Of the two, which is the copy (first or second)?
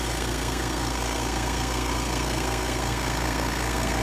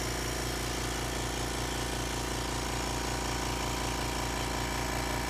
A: first